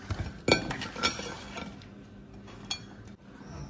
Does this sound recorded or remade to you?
recorded